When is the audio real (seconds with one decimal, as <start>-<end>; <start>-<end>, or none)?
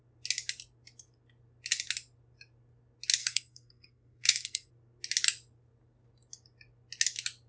0.0-3.2; 4.7-7.5